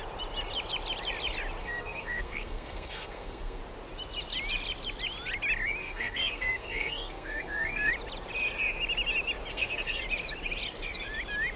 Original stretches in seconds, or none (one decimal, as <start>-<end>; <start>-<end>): 0.0-1.6; 3.6-5.8; 7.9-9.5; 10.0-11.6